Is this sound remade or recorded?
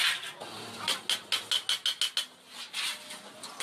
recorded